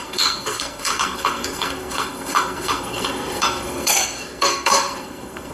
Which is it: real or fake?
fake